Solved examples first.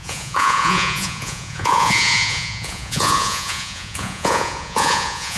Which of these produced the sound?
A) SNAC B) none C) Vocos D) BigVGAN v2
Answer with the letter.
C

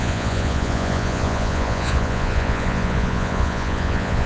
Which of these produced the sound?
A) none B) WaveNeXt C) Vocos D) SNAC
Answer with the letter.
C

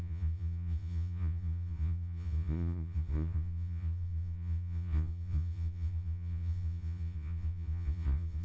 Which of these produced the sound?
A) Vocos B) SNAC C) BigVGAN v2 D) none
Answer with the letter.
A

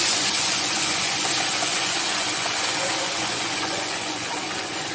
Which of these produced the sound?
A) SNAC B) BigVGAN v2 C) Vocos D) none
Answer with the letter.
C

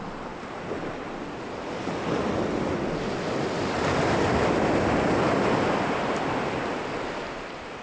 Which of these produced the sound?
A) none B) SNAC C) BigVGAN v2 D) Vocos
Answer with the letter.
A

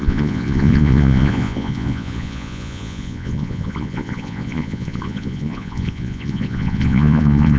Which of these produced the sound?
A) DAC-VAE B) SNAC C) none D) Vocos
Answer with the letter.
D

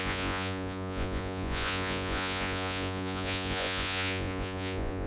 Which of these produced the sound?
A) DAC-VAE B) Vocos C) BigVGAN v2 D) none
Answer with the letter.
B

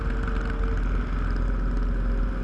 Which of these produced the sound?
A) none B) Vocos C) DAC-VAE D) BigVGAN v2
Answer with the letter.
A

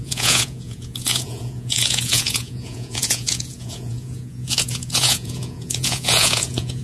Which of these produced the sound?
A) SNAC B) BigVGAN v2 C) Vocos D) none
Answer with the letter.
C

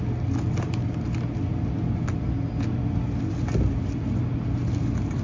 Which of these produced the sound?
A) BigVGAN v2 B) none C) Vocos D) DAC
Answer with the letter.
B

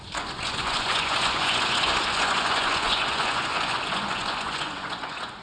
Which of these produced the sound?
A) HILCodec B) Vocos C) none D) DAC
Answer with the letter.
B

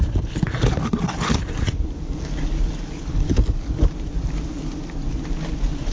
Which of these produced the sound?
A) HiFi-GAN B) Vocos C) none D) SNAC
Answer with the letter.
C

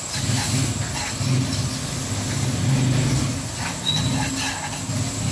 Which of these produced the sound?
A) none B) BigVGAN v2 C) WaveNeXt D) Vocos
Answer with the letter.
A